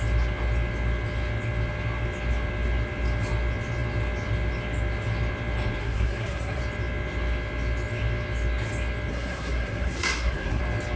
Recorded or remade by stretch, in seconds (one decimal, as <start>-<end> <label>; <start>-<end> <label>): 0.0-5.8 recorded; 5.8-6.6 remade; 6.6-9.1 recorded; 9.1-10.6 remade; 10.6-11.0 recorded